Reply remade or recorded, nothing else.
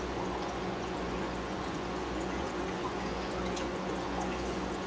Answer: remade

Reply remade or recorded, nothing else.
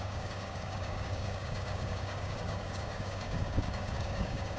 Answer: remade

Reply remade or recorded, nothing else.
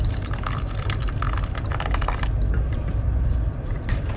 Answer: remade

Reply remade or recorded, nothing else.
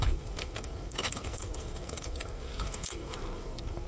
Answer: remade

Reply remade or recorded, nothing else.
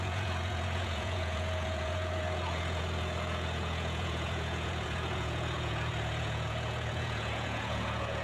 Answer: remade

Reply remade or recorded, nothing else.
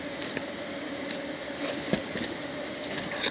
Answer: recorded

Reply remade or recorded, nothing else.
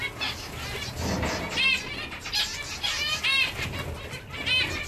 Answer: recorded